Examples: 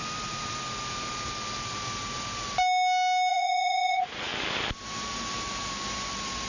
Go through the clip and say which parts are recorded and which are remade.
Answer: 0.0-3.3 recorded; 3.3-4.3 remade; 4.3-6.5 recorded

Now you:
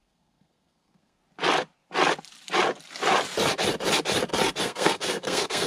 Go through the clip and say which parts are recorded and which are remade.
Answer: 0.0-1.2 remade; 1.2-4.6 recorded; 4.6-5.7 remade